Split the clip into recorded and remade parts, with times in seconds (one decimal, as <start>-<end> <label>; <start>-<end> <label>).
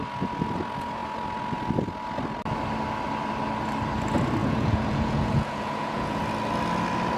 0.0-4.4 recorded; 4.4-6.2 remade; 6.2-7.2 recorded